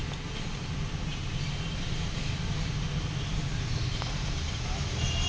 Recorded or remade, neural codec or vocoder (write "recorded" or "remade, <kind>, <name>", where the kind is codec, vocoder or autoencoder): recorded